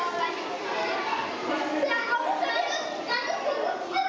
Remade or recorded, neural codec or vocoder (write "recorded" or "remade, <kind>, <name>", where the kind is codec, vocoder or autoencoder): recorded